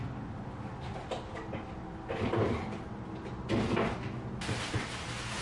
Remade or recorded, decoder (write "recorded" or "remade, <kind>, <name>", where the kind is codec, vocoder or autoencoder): recorded